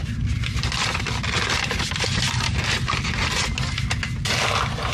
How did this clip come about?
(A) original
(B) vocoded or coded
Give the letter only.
A